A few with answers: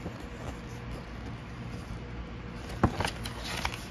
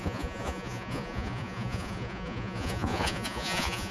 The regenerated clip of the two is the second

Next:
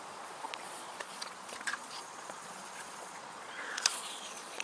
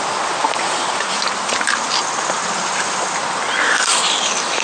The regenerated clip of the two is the first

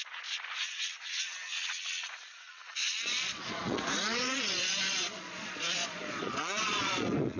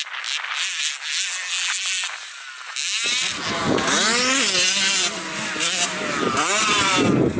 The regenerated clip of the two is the first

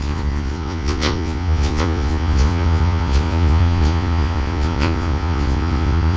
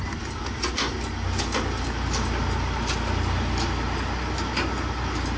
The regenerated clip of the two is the first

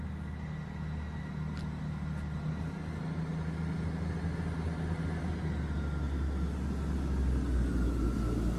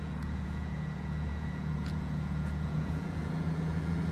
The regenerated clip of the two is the second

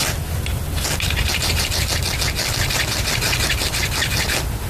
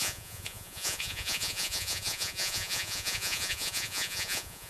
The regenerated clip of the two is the second